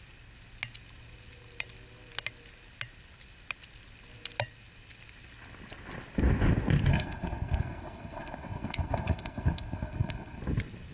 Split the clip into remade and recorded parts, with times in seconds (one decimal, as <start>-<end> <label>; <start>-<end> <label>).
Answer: 0.0-6.9 recorded; 6.9-10.4 remade; 10.4-10.9 recorded